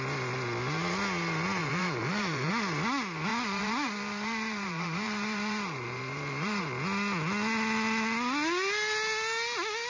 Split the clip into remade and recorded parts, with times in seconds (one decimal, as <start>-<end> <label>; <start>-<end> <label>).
0.0-1.6 recorded; 1.6-2.5 remade; 2.5-3.3 recorded; 3.3-6.6 remade; 6.6-9.9 recorded